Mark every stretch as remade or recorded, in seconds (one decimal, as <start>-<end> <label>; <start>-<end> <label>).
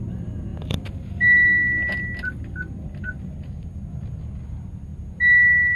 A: 0.0-5.8 recorded